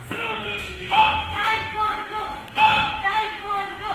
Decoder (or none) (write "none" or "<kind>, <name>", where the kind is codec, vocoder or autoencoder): autoencoder, DAC-VAE